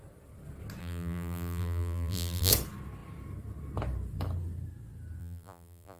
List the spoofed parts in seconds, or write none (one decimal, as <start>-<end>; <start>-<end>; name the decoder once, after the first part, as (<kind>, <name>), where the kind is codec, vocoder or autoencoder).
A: 0.8-2.5 (vocoder, BigVGAN v2); 5.2-6.0